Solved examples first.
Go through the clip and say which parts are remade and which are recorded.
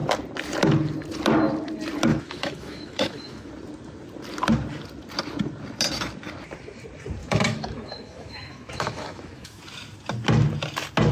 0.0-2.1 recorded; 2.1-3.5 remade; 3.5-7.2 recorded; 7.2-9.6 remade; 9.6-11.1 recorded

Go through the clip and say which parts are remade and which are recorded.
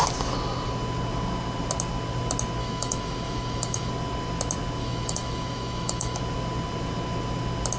0.0-2.6 recorded; 2.6-3.9 remade; 3.9-4.8 recorded; 4.8-6.2 remade; 6.2-7.8 recorded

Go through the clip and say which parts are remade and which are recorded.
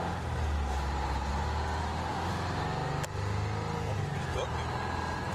0.0-1.8 recorded; 1.8-2.3 remade; 2.3-5.3 recorded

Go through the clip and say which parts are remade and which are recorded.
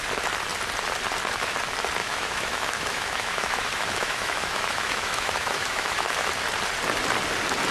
0.0-2.0 recorded; 2.0-6.3 remade; 6.3-7.7 recorded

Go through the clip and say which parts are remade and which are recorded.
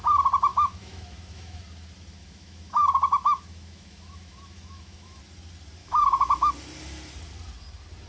0.0-0.5 recorded; 0.5-1.6 remade; 1.6-2.2 recorded; 2.2-5.2 remade; 5.2-5.8 recorded; 5.8-6.5 remade; 6.5-8.1 recorded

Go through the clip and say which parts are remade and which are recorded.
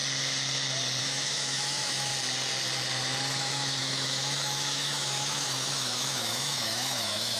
0.0-1.0 recorded; 1.0-2.1 remade; 2.1-3.4 recorded; 3.4-7.4 remade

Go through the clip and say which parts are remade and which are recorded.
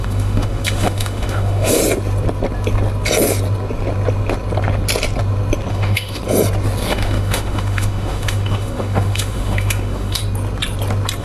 0.0-1.8 remade; 1.8-5.7 recorded; 5.7-6.2 remade; 6.2-6.9 recorded; 6.9-10.2 remade; 10.2-11.2 recorded